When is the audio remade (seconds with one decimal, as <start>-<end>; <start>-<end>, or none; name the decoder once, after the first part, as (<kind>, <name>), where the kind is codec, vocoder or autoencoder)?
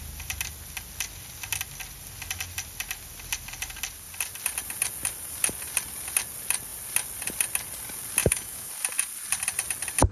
8.2-8.7 (autoencoder, DAC-VAE)